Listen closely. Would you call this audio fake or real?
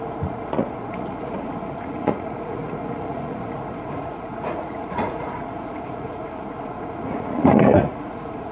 fake